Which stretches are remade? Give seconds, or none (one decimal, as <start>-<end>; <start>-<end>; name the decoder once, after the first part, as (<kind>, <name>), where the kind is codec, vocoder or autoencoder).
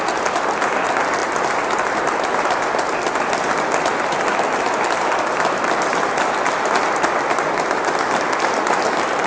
none